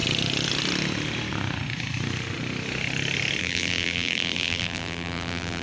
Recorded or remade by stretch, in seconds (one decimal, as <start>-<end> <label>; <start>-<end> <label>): 0.0-3.4 recorded; 3.4-5.6 remade